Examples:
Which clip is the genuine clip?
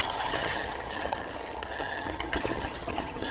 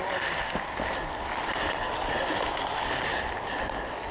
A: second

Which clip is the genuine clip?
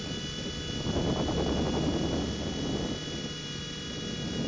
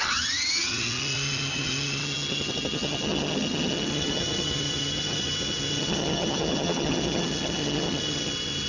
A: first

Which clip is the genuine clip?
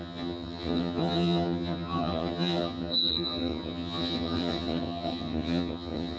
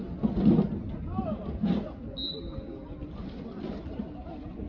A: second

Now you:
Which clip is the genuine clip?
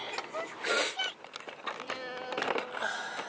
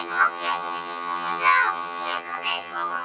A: first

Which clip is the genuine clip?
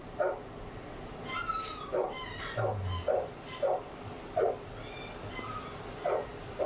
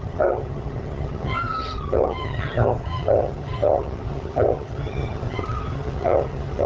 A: first